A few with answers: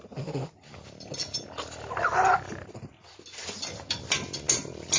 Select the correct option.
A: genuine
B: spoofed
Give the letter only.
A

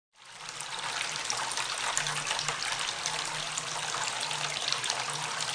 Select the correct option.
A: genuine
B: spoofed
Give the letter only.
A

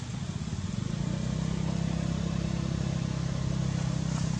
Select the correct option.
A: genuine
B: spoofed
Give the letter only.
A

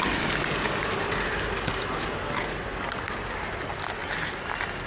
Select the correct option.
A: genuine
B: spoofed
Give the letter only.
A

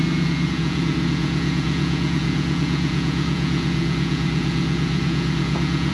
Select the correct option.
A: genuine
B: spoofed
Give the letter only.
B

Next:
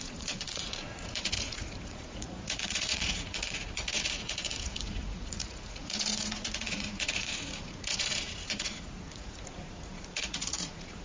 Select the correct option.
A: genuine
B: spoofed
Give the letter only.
B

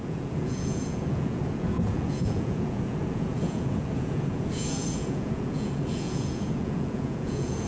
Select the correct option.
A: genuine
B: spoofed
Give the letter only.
B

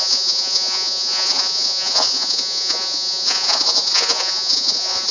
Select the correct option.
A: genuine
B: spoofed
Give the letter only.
B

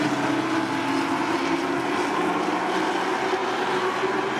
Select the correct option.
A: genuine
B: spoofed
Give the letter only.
A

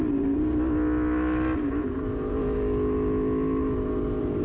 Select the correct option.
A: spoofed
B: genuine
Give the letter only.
B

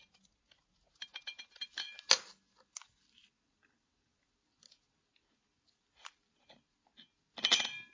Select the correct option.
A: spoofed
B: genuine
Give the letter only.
B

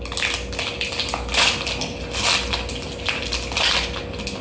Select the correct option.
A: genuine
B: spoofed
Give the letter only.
A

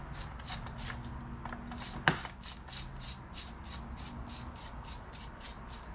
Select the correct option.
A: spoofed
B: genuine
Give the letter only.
B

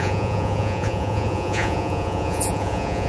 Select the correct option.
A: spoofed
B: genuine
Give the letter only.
A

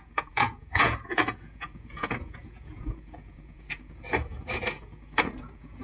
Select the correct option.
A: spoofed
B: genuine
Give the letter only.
A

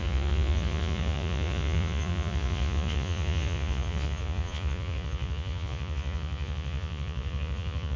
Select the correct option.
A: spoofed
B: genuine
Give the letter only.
A